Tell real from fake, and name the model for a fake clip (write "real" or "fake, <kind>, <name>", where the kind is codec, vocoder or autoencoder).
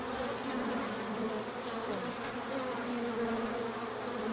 real